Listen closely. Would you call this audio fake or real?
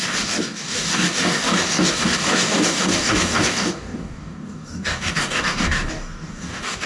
fake